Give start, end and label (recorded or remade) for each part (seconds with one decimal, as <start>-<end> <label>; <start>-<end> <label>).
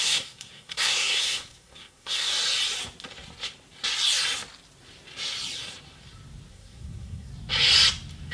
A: 0.0-2.3 remade; 2.3-6.5 recorded; 6.5-7.3 remade; 7.3-8.3 recorded